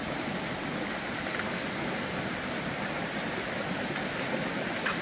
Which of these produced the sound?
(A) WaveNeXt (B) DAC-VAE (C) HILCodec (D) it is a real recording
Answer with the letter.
D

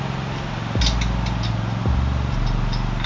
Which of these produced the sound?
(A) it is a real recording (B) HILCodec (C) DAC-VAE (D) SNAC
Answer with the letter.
A